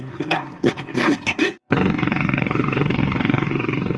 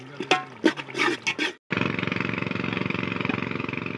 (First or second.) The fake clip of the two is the first